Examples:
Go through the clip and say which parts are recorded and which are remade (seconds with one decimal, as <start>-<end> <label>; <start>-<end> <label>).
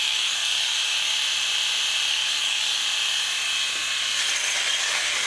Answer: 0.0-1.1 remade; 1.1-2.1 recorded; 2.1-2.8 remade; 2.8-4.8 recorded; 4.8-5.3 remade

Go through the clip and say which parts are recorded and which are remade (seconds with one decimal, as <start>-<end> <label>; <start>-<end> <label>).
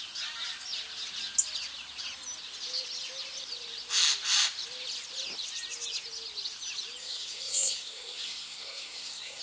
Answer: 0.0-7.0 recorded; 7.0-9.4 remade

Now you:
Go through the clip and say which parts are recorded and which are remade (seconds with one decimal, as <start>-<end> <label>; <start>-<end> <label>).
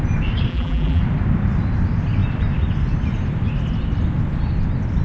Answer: 0.0-0.5 recorded; 0.5-1.0 remade; 1.0-5.0 recorded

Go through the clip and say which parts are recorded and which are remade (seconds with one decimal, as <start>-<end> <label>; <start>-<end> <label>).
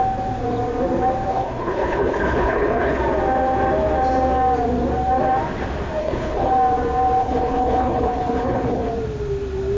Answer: 0.0-1.3 recorded; 1.3-3.0 remade; 3.0-6.0 recorded; 6.0-6.5 remade; 6.5-7.2 recorded; 7.2-8.9 remade; 8.9-9.8 recorded